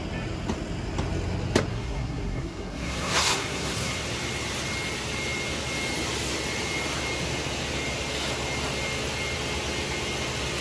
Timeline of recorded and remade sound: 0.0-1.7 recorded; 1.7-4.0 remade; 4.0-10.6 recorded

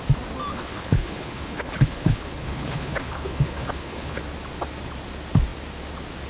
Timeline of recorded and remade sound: 0.0-0.5 recorded; 0.5-4.2 remade; 4.2-6.3 recorded

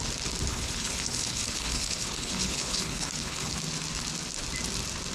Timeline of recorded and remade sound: 0.0-0.5 recorded; 0.5-3.6 remade; 3.6-5.1 recorded